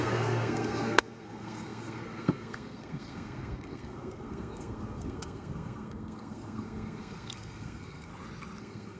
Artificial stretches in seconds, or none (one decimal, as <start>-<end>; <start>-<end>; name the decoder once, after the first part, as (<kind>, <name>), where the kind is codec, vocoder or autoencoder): 0.0-8.1 (codec, SNAC); 8.6-9.0